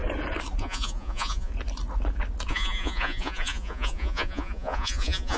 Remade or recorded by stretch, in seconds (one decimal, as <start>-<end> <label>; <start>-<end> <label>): 0.0-0.6 recorded; 0.6-1.5 remade; 1.5-2.5 recorded; 2.5-5.4 remade